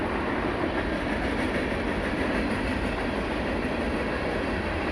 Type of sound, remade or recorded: recorded